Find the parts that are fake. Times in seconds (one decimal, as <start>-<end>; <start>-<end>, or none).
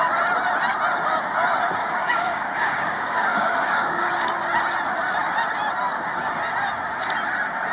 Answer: 1.8-4.1